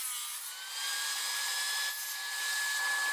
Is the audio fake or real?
real